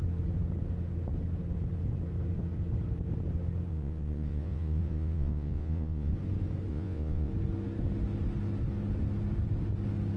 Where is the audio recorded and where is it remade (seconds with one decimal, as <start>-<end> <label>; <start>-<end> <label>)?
0.0-3.7 recorded; 3.7-6.1 remade; 6.1-6.7 recorded; 6.7-7.3 remade; 7.3-10.2 recorded